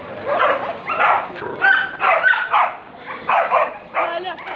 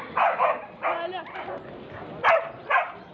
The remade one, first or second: first